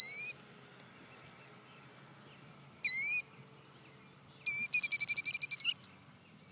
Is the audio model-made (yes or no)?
no